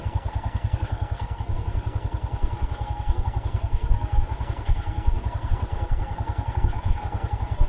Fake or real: fake